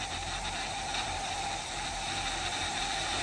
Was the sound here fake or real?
real